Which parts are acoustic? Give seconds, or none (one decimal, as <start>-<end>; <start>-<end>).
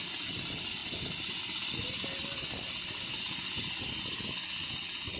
0.0-4.6